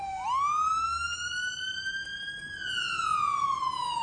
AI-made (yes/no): no